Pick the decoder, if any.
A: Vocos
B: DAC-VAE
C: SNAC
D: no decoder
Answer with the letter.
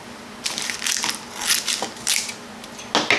D